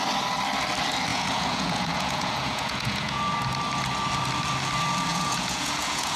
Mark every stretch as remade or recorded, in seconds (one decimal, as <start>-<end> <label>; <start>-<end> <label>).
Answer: 0.0-1.1 recorded; 1.1-3.2 remade; 3.2-5.1 recorded; 5.1-6.2 remade